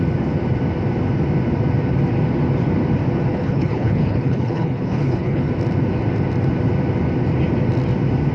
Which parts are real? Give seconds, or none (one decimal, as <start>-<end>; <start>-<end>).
0.0-3.3; 5.5-8.3